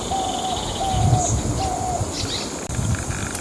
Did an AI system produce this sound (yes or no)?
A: no